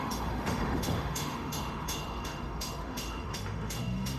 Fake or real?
fake